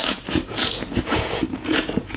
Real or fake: fake